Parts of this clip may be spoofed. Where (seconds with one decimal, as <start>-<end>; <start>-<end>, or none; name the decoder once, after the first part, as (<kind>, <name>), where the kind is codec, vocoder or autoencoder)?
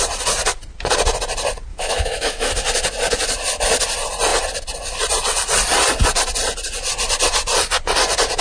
1.7-2.5 (autoencoder, DAC-VAE)